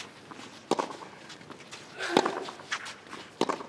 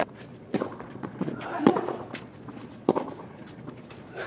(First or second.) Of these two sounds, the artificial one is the second